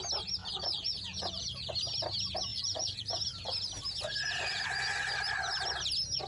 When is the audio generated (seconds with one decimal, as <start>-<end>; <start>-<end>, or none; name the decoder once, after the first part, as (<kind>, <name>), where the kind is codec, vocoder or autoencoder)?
0.4-1.7 (vocoder, Vocos); 2.5-3.2